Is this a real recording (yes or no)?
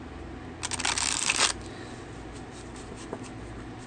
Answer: yes